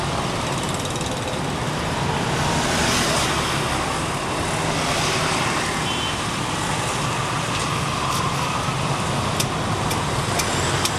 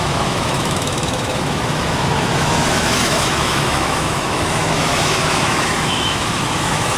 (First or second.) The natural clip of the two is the first